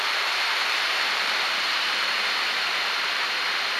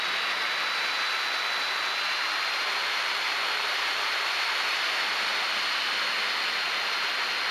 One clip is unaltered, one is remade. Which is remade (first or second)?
first